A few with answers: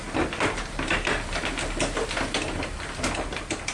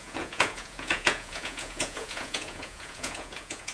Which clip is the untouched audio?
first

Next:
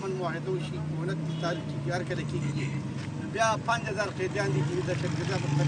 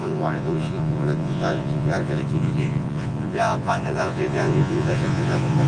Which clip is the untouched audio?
first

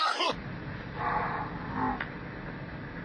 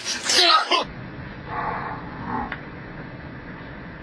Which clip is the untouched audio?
first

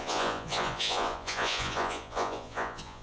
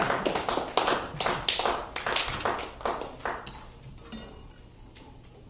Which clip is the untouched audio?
second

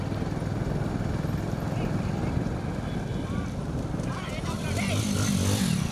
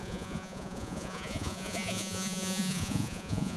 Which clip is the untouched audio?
first